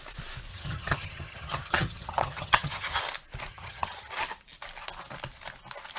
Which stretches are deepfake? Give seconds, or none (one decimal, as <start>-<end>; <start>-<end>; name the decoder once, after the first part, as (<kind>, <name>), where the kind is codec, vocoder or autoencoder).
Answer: 0.5-3.0 (vocoder, HiFi-GAN); 3.5-4.1